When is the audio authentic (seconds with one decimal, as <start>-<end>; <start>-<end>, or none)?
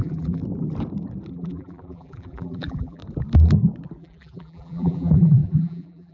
0.4-1.3; 3.0-4.0